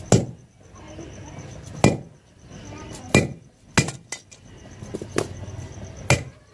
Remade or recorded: recorded